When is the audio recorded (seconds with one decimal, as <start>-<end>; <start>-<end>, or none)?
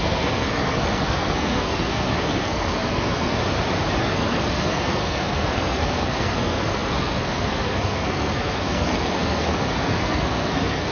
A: 3.4-4.0